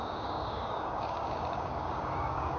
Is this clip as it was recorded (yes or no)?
no